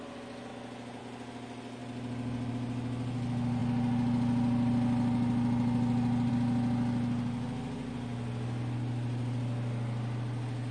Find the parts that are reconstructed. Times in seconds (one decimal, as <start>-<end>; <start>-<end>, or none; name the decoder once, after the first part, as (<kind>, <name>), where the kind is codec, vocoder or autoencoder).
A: 1.8-2.5 (vocoder, BigVGAN v2)